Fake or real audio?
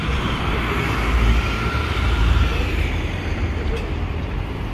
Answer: fake